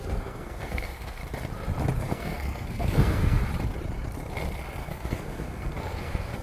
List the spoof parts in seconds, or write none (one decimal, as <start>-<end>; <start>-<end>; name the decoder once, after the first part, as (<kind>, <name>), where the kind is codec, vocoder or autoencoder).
0.0-1.2 (codec, SNAC); 2.0-3.4; 4.8-6.4